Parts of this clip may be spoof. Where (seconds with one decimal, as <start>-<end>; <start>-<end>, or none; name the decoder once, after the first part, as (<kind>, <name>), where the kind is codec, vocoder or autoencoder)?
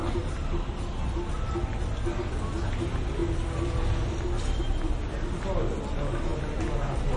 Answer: none